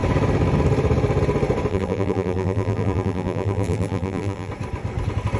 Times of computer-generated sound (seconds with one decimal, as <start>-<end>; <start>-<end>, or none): 1.7-4.5